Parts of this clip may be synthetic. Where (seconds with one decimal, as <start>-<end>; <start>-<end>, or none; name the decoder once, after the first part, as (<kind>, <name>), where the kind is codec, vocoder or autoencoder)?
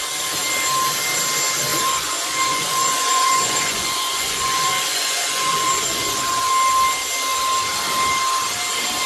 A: 1.7-6.5 (vocoder, Vocos)